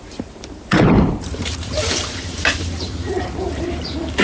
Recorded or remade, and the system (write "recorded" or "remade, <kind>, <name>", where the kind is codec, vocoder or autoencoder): remade, vocoder, BigVGAN v2